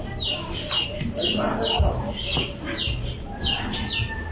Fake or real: real